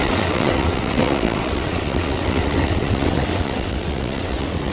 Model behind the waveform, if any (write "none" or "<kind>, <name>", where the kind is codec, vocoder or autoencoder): vocoder, WaveNeXt